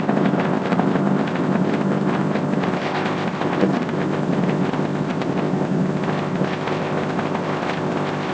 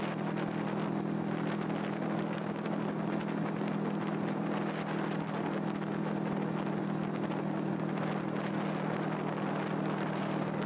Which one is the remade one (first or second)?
first